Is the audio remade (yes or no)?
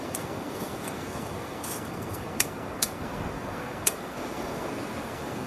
yes